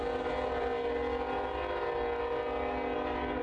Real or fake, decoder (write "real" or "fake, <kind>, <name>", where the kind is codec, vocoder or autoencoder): real